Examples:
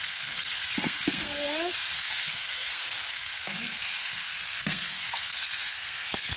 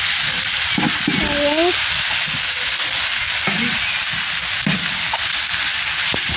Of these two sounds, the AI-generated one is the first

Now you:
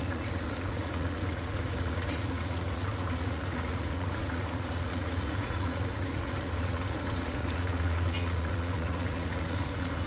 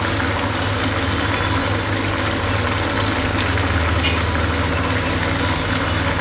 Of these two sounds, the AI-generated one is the first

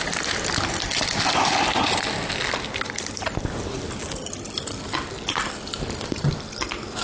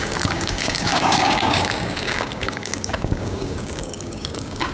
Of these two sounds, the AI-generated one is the second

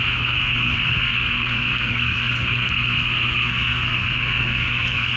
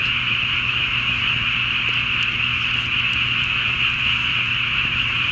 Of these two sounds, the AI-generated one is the first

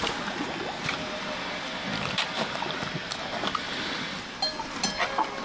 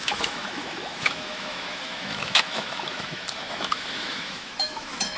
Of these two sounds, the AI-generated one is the second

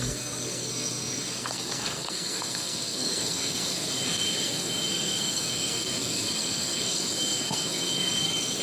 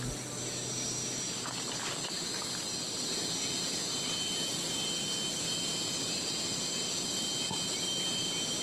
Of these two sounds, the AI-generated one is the first